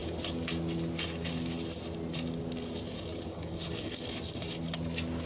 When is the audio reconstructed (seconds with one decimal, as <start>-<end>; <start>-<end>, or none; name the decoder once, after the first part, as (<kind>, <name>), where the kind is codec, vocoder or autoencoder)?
3.3-4.1 (codec, HILCodec)